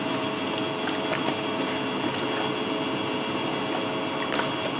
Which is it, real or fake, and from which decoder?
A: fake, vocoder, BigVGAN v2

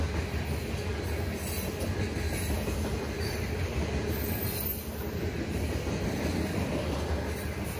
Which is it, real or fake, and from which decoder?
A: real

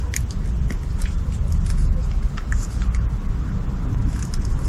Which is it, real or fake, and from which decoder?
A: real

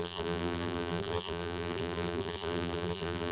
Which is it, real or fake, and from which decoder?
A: fake, vocoder, BigVGAN v2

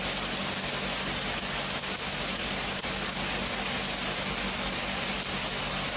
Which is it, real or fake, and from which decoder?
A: real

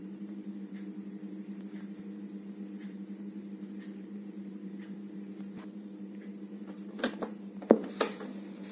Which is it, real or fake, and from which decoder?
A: fake, vocoder, BigVGAN v2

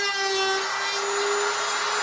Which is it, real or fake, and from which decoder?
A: real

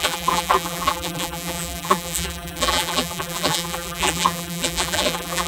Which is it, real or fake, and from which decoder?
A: fake, vocoder, BigVGAN v2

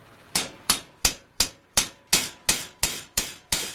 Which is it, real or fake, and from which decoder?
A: fake, vocoder, BigVGAN v2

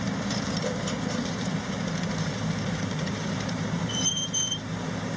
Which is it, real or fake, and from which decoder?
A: fake, vocoder, BigVGAN v2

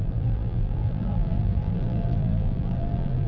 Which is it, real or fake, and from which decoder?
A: fake, vocoder, BigVGAN v2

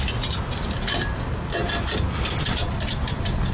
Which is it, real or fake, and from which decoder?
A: real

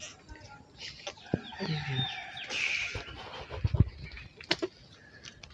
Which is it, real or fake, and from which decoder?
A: real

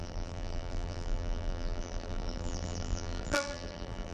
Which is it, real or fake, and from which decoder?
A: fake, vocoder, BigVGAN v2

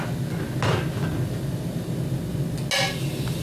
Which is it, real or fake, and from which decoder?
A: real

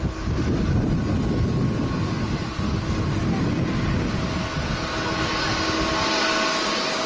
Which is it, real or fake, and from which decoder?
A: real